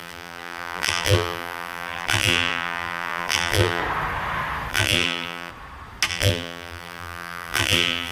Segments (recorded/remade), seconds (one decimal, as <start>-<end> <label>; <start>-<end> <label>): 0.0-3.8 remade; 3.8-4.7 recorded; 4.7-5.5 remade; 5.5-6.1 recorded; 6.1-8.1 remade